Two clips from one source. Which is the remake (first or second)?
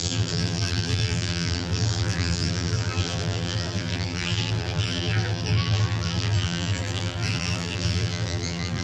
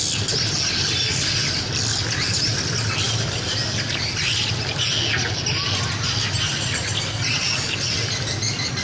first